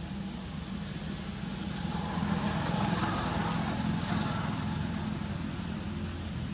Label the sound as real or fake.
real